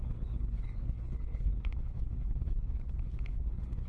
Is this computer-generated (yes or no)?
yes